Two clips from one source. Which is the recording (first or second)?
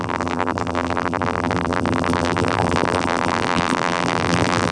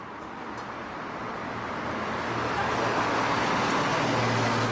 second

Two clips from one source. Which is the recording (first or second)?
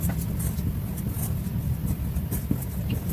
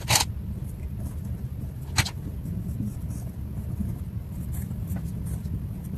first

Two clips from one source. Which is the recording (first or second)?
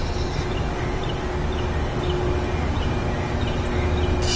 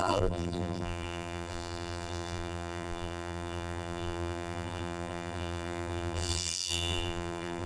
first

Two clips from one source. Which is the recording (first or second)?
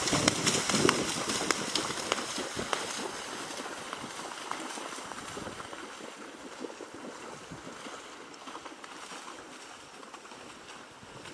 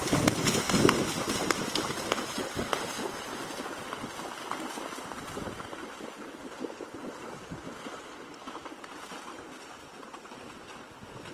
second